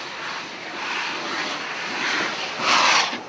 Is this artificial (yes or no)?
yes